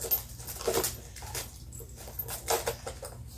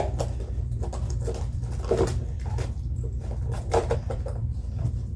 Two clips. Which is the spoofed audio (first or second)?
second